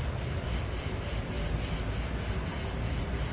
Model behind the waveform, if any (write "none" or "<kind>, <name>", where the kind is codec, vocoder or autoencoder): none